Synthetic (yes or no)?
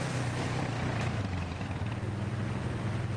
no